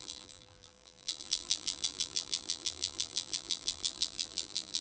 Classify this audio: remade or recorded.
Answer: remade